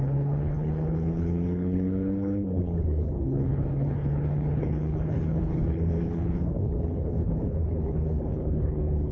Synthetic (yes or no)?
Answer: yes